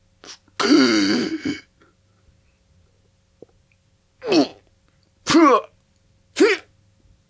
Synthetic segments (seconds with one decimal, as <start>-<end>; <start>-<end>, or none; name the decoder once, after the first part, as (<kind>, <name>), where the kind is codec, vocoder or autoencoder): none